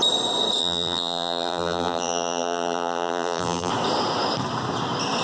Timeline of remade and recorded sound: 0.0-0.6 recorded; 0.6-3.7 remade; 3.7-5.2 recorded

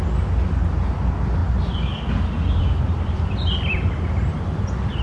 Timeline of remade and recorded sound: 0.0-5.0 recorded

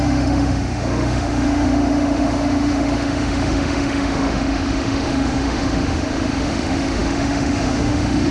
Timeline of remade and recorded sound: 0.0-8.3 remade

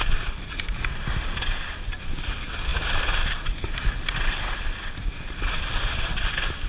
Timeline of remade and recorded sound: 0.0-6.7 recorded

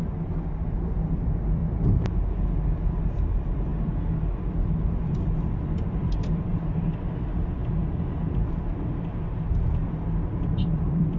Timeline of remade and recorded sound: 0.0-1.6 remade; 1.6-3.0 recorded; 3.0-3.7 remade; 3.7-4.4 recorded; 4.4-7.6 remade; 7.6-10.3 recorded; 10.3-11.2 remade

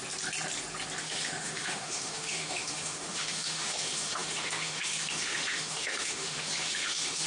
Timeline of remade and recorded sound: 0.0-1.0 recorded; 1.0-7.3 remade

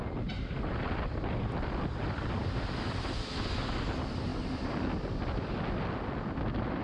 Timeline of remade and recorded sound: 0.0-6.8 recorded